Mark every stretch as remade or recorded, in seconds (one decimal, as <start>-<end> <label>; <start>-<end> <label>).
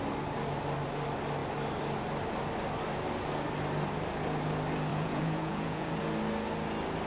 0.0-4.9 recorded; 4.9-6.0 remade; 6.0-7.1 recorded